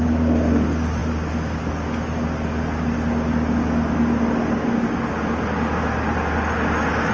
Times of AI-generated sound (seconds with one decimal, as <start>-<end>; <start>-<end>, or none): none